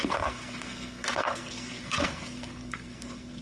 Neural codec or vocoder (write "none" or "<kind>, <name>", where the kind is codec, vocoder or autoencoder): codec, SNAC